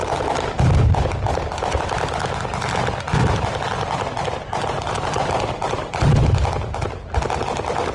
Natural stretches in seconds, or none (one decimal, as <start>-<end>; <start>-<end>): 0.0-7.9